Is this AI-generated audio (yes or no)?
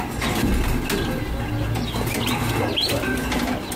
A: no